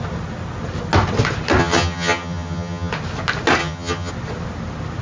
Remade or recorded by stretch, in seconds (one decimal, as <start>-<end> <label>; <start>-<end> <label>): 0.0-1.6 recorded; 1.6-2.9 remade; 2.9-3.6 recorded; 3.6-4.1 remade; 4.1-5.0 recorded